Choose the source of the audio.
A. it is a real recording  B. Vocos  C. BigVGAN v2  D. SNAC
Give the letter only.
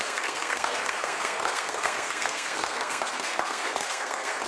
D